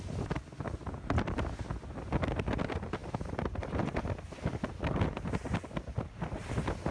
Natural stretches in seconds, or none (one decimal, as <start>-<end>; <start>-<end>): 0.0-6.9